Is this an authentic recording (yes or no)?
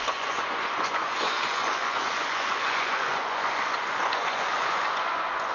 no